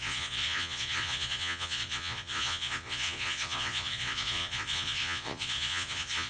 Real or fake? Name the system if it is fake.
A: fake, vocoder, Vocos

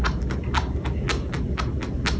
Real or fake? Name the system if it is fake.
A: real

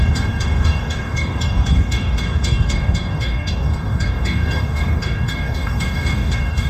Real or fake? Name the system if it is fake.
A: fake, codec, DAC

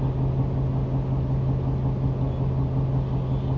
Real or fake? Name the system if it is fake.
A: real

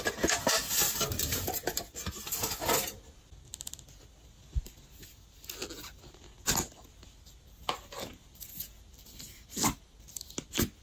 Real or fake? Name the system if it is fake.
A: real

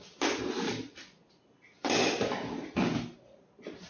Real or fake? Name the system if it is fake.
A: real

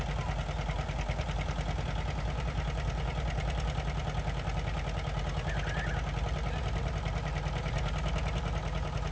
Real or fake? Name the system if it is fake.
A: real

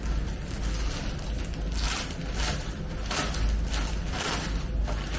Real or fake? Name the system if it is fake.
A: real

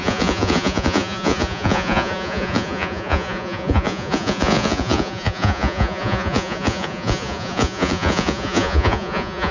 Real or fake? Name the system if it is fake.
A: fake, vocoder, Vocos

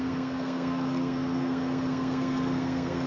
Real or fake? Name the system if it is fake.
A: fake, codec, SNAC